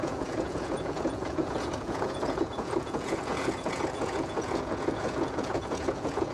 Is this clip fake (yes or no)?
yes